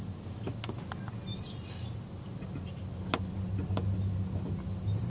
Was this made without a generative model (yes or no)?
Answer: yes